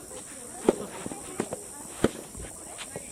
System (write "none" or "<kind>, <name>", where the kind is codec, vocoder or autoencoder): none